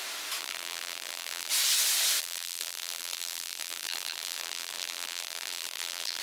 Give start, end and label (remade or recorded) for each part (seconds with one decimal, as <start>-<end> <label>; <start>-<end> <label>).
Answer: 0.0-0.4 recorded; 0.4-1.5 remade; 1.5-2.2 recorded; 2.2-6.2 remade